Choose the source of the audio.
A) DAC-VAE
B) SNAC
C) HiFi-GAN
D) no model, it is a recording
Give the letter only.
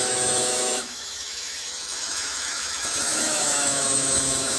A